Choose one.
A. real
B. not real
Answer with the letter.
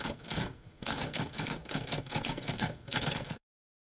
B